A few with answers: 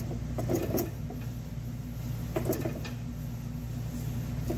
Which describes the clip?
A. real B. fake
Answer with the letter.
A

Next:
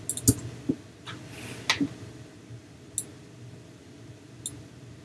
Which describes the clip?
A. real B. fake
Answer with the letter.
A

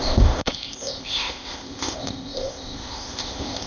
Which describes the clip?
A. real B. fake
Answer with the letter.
B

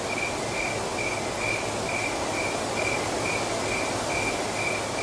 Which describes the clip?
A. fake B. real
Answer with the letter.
B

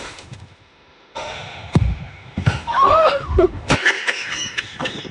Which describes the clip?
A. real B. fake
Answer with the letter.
B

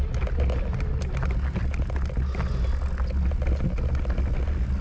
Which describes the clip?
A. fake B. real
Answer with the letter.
B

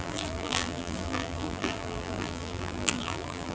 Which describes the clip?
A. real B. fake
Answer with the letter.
B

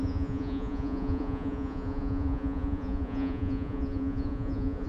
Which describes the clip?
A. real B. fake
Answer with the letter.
B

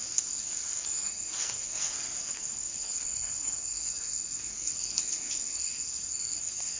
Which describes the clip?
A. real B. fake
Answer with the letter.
B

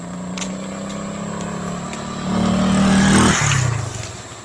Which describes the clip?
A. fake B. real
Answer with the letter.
B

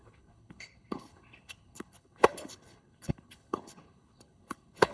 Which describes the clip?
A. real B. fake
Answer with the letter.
B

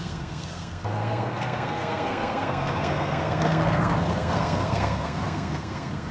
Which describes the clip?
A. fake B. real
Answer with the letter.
A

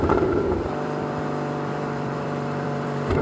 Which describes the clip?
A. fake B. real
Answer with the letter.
A